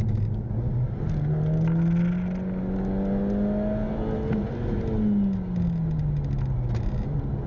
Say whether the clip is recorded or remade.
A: recorded